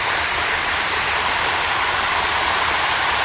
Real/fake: fake